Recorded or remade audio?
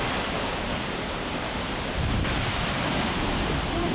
remade